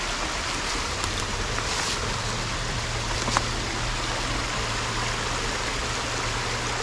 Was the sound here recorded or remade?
recorded